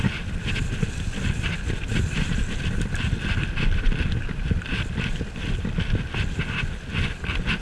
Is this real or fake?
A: real